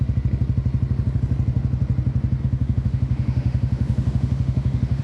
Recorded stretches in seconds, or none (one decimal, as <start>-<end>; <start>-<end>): 0.0-2.4